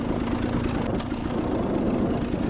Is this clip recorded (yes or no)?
yes